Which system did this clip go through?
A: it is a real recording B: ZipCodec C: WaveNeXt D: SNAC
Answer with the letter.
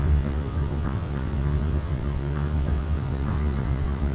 C